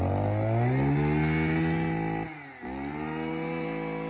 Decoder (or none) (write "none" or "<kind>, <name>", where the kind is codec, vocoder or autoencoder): none